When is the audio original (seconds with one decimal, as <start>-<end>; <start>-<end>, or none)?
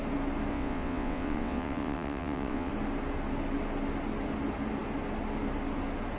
0.0-0.5; 2.7-6.2